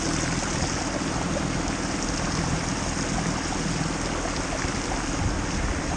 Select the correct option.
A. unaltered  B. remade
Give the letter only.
A